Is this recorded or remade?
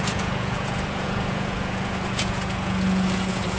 remade